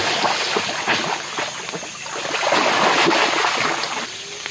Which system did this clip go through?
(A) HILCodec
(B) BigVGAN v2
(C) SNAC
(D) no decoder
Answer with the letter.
D